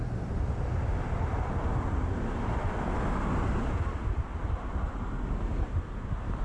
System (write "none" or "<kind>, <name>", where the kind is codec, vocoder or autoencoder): none